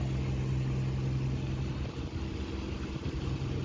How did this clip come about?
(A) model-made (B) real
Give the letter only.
B